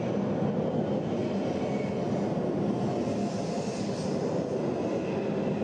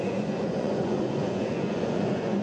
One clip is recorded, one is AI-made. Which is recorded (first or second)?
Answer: first